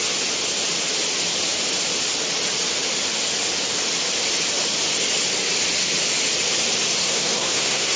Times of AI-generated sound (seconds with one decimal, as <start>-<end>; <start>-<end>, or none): 7.0-8.0